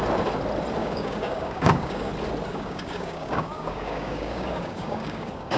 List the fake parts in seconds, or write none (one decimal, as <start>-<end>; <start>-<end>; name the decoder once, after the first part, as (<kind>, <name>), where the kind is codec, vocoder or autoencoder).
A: 0.8-2.1 (codec, DAC); 2.5-5.6